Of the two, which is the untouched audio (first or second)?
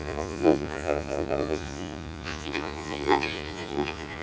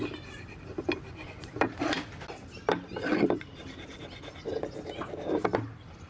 second